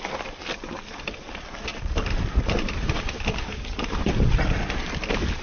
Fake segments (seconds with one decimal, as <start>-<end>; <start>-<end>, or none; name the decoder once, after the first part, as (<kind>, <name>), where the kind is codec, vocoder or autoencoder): 1.7-4.9 (vocoder, BigVGAN v2)